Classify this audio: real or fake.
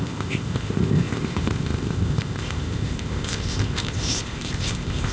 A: fake